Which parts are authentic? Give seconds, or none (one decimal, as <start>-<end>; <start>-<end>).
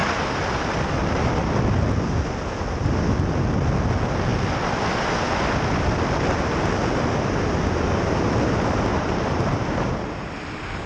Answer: 0.0-8.9; 9.9-10.9